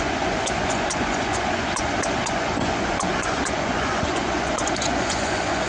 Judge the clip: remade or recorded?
remade